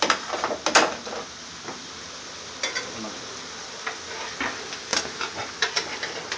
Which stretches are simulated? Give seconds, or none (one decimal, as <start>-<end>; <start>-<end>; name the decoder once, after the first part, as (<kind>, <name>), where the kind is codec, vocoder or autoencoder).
4.9-5.5 (vocoder, BigVGAN v2)